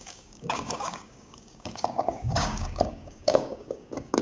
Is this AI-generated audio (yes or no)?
yes